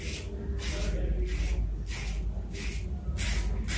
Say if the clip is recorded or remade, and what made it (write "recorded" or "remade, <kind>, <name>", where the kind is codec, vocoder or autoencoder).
recorded